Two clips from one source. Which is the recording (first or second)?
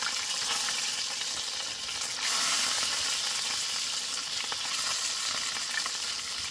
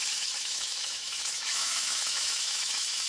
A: first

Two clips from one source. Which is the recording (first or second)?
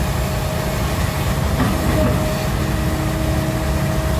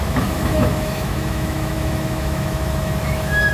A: first